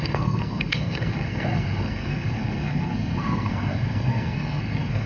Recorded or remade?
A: remade